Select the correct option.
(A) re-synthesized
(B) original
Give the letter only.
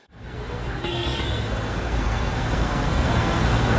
A